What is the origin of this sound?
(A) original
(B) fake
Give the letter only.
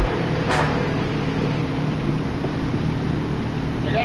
B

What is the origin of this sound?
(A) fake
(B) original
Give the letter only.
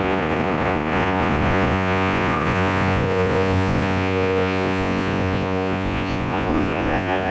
A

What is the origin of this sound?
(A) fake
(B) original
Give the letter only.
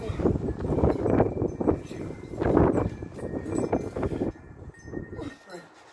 B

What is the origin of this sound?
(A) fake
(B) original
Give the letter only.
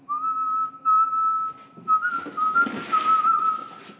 B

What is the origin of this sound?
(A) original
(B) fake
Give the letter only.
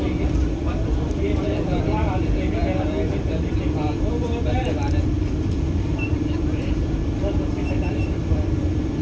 B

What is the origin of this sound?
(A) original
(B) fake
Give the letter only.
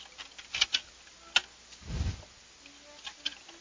A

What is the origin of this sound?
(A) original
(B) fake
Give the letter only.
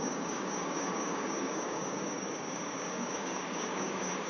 B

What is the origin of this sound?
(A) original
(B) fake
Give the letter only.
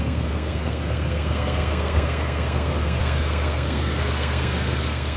B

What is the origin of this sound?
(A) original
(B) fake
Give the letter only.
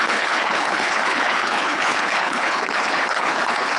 B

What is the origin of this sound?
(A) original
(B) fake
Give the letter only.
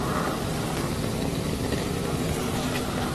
A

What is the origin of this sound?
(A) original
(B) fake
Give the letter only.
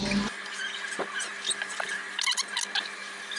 A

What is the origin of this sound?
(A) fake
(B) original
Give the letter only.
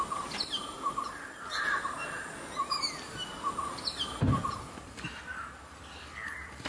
B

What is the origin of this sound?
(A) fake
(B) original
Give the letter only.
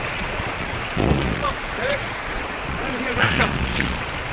A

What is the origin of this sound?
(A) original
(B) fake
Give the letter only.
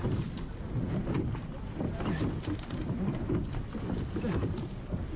A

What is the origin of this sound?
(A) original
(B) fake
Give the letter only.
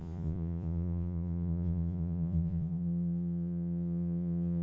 B